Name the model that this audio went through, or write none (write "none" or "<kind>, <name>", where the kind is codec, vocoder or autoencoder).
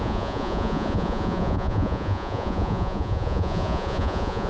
vocoder, Vocos